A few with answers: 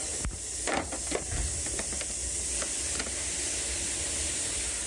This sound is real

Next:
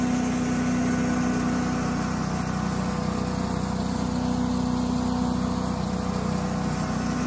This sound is real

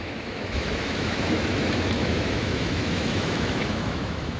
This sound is fake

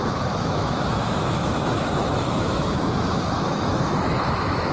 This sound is fake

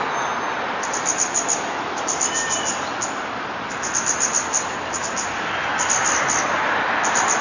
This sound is real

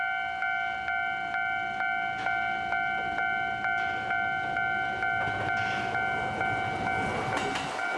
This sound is real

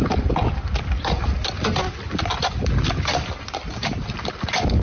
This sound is real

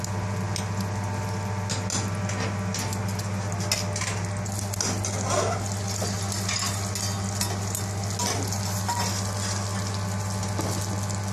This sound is real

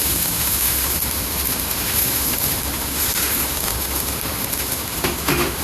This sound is fake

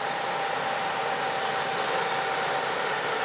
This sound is real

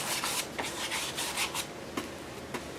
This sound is real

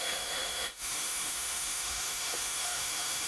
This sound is fake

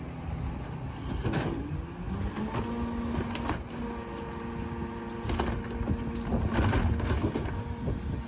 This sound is real